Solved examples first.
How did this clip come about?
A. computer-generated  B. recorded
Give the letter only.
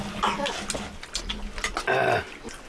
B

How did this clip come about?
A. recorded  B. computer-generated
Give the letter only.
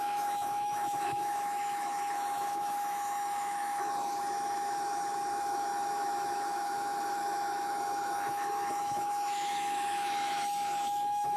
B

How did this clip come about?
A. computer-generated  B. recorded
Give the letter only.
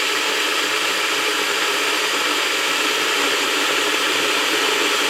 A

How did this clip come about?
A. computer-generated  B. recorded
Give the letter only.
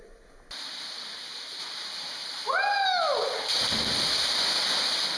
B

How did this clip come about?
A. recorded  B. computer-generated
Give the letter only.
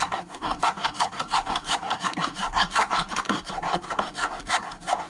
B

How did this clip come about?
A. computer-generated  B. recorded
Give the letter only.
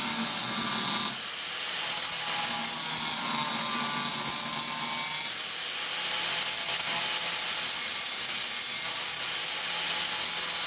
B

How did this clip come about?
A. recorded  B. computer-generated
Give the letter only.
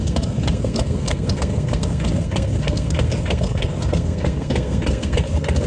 B